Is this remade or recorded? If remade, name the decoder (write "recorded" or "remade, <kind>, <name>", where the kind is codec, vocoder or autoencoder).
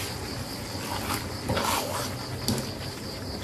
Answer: recorded